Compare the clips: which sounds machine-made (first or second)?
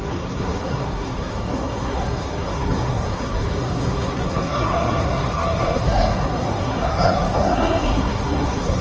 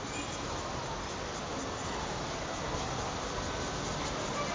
first